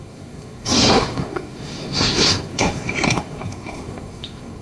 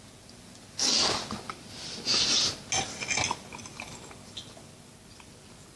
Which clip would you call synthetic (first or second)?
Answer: first